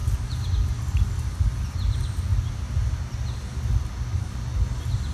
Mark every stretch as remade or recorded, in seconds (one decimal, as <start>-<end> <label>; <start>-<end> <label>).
0.0-5.1 recorded